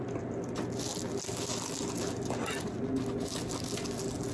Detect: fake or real real